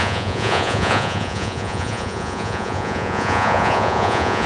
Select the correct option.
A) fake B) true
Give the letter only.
A